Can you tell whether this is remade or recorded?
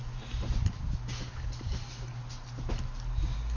recorded